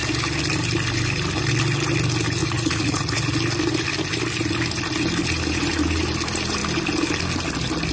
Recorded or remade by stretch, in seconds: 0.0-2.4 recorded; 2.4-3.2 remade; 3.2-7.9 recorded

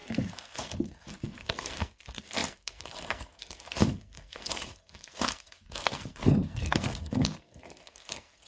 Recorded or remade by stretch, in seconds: 0.0-8.5 remade